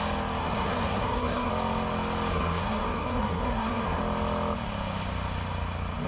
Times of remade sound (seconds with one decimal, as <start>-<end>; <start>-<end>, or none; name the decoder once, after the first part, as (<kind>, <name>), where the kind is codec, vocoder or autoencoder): 0.4-1.5 (codec, SNAC); 2.3-4.0